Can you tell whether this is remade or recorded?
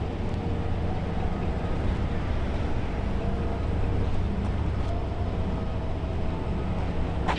recorded